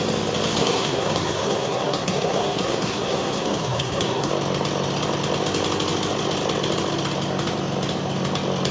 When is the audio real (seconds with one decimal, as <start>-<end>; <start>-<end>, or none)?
0.0-0.6; 4.3-8.7

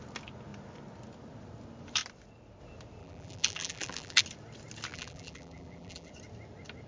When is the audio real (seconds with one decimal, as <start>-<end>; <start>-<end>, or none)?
0.0-3.0; 4.2-4.9; 6.1-6.9

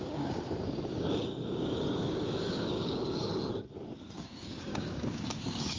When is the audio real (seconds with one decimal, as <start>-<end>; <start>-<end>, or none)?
3.3-4.0

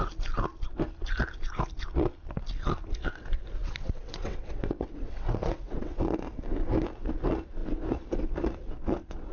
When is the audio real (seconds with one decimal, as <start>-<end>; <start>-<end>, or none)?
0.0-3.6; 6.0-9.3

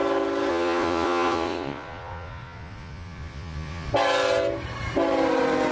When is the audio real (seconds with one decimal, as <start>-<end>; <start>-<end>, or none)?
0.0-0.5; 3.9-5.7